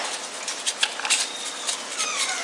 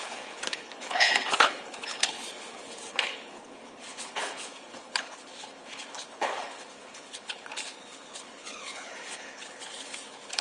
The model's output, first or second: second